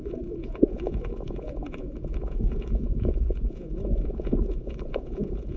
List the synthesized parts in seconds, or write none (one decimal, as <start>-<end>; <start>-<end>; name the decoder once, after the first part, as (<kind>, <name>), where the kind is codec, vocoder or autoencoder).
0.0-5.6 (vocoder, Vocos)